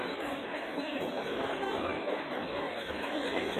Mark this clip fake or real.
fake